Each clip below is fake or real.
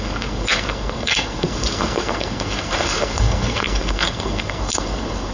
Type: fake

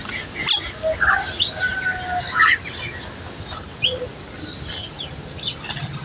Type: real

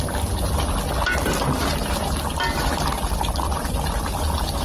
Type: real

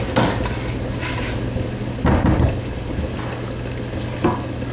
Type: real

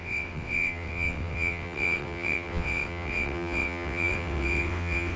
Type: fake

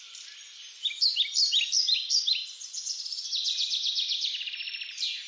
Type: real